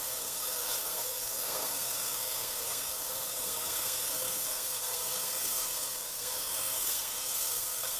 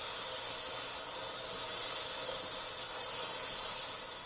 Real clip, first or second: second